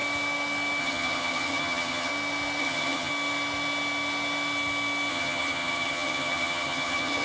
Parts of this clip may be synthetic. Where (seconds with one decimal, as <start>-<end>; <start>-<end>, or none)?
0.8-2.1; 2.6-3.1; 5.1-7.2